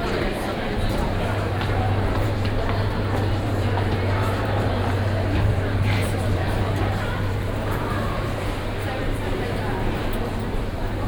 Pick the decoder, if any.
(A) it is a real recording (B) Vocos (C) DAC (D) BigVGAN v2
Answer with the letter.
D